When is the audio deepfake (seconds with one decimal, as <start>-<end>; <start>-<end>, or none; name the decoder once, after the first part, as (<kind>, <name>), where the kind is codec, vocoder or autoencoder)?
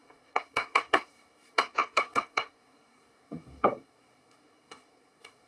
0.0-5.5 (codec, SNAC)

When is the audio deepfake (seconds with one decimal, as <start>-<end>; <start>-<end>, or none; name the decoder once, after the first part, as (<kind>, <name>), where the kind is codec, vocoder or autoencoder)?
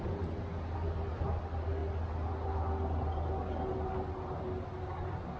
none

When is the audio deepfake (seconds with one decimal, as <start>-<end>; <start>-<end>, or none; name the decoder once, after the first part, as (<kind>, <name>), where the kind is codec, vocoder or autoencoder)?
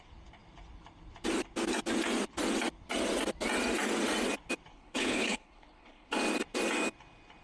4.7-6.1 (codec, HILCodec)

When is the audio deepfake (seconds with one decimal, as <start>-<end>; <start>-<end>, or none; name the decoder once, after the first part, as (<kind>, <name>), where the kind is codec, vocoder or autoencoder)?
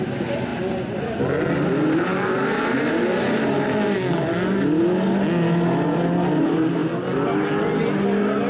none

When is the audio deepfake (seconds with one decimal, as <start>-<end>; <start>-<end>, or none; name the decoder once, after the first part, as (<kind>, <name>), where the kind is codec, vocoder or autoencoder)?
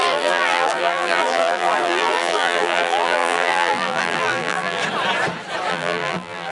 0.0-4.8 (vocoder, BigVGAN v2); 5.7-6.5